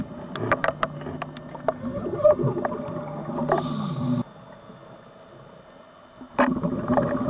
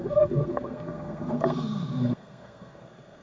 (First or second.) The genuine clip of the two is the first